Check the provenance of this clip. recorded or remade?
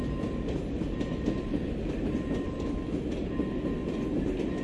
recorded